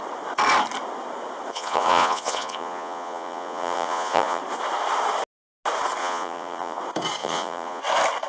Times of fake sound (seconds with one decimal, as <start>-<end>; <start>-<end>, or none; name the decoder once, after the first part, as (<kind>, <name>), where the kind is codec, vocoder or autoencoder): 1.5-4.4 (vocoder, Vocos); 6.0-6.8; 7.2-7.8